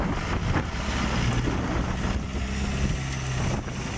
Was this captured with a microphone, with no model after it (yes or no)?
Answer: yes